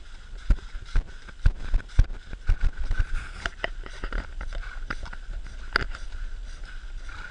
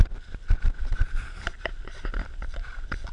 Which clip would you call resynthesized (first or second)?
second